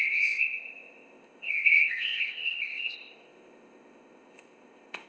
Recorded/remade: remade